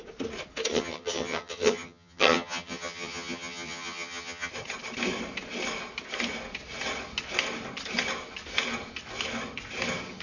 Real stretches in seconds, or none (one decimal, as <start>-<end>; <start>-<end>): 0.0-0.7; 4.5-10.2